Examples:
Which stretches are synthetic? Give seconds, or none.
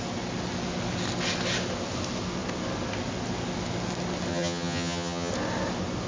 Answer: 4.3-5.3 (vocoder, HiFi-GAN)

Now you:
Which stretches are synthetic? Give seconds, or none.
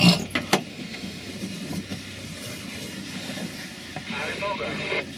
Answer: 0.7-1.3 (autoencoder, DAC-VAE)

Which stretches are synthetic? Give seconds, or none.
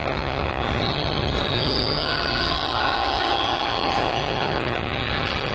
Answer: 0.0-5.5 (vocoder, HiFi-GAN)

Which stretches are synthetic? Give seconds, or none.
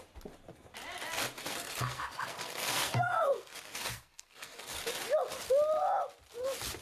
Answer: 1.4-4.8 (codec, SNAC)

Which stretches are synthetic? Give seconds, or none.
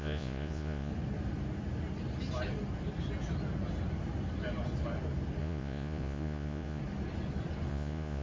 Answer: 0.0-0.9 (vocoder, Vocos); 5.4-6.8; 7.7-8.2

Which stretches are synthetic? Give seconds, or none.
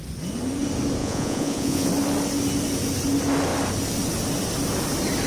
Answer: 1.0-1.9 (vocoder, Vocos)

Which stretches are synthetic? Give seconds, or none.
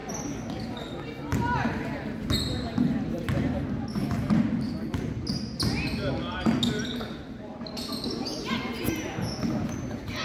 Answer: 1.3-2.3 (vocoder, BigVGAN v2)